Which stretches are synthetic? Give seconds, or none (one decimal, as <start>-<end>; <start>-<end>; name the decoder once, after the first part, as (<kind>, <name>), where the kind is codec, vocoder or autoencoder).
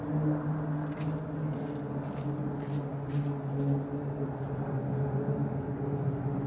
none